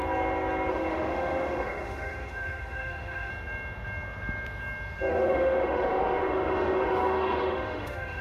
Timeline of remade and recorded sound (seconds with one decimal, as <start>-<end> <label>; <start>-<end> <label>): 0.0-0.7 recorded; 0.7-3.3 remade; 3.3-5.1 recorded; 5.1-8.2 remade